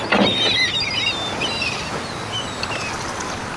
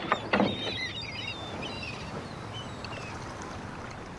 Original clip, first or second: first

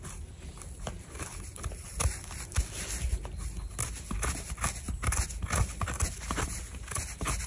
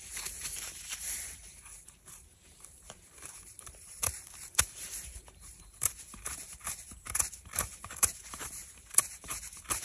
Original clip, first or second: first